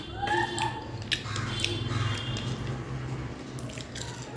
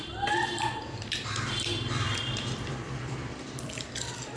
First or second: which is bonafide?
first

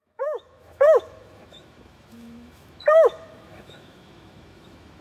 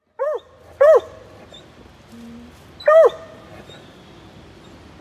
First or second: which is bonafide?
second